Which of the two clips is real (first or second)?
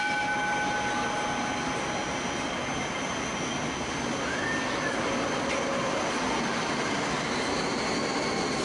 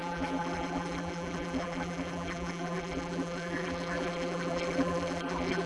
first